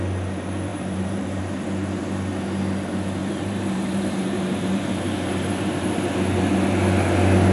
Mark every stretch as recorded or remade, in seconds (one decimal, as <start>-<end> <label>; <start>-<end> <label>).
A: 0.0-0.7 recorded; 0.7-1.4 remade; 1.4-3.2 recorded; 3.2-4.9 remade; 4.9-7.5 recorded